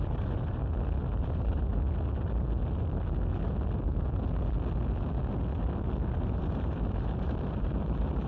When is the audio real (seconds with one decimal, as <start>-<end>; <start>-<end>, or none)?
0.6-1.2; 1.7-6.1